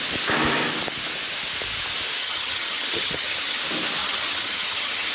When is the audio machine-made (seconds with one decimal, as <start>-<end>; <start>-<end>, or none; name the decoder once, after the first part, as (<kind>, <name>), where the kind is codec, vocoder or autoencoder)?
2.2-3.6 (vocoder, HiFi-GAN); 4.0-5.1